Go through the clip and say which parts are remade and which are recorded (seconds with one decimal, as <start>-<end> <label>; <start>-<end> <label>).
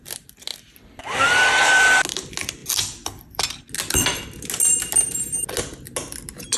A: 0.0-6.6 recorded